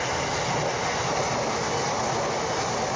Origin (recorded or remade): recorded